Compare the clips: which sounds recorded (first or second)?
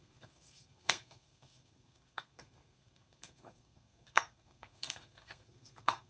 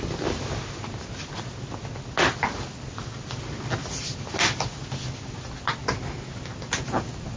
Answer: second